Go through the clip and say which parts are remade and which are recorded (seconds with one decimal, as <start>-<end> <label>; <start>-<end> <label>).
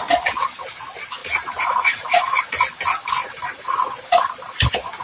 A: 0.0-1.2 recorded; 1.2-2.4 remade; 2.4-3.2 recorded; 3.2-5.0 remade